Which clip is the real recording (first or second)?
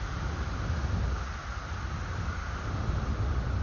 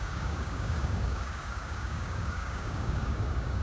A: first